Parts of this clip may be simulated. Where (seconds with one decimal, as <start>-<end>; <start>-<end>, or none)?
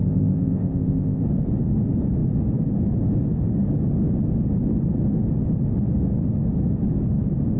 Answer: 0.0-1.2